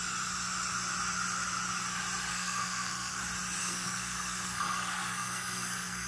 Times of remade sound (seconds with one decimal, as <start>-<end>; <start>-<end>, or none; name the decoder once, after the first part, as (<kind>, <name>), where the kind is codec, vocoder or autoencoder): 2.3-3.2 (codec, SNAC); 3.6-6.1